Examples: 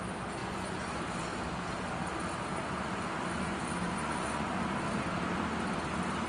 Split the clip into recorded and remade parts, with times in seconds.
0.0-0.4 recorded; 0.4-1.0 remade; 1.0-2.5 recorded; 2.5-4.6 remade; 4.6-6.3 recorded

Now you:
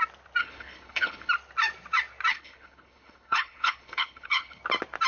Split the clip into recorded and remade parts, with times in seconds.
0.0-0.4 recorded; 0.4-1.3 remade; 1.3-2.3 recorded; 2.3-4.6 remade; 4.6-5.1 recorded

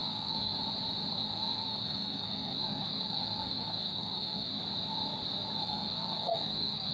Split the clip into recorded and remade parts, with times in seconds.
0.0-0.5 remade; 0.5-1.1 recorded; 1.1-4.6 remade; 4.6-5.6 recorded; 5.6-6.9 remade

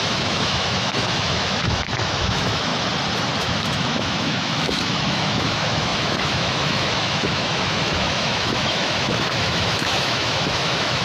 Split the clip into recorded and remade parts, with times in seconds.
0.0-2.7 remade; 2.7-3.4 recorded; 3.4-11.0 remade

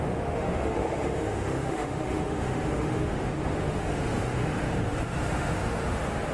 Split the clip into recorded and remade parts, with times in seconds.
0.0-6.3 remade

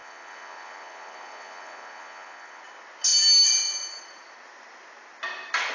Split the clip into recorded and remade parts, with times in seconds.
0.0-2.6 remade; 2.6-5.7 recorded